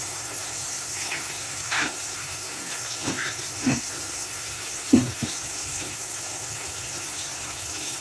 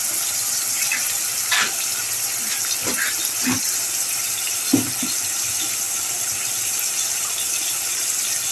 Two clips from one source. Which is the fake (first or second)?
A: first